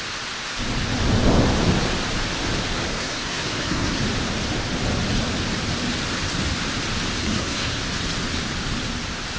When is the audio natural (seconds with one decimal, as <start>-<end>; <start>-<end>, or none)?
0.0-2.9; 4.0-7.2; 7.8-9.4